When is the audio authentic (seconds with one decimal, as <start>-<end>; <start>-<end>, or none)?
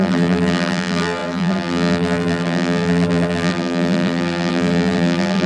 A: none